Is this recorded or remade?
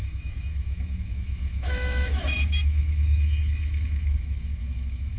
remade